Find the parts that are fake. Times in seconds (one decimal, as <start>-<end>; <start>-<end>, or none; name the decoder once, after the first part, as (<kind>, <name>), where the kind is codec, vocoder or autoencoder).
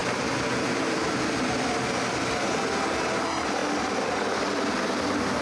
none